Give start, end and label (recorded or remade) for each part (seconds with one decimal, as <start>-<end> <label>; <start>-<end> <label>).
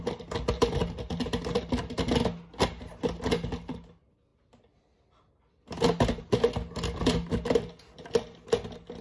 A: 0.0-9.0 recorded